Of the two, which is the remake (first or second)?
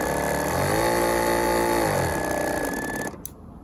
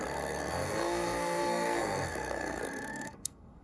second